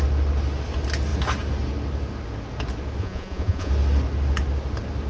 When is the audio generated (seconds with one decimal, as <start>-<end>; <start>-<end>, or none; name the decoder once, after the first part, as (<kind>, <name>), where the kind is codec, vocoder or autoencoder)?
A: 3.0-3.7 (vocoder, Vocos)